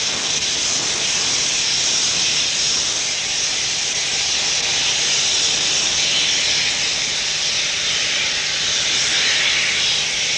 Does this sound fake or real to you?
real